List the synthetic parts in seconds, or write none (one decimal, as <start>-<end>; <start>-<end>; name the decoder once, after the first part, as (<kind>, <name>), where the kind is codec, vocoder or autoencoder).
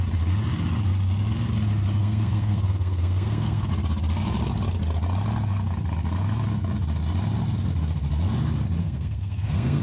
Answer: 2.0-3.7 (codec, SNAC); 8.8-9.8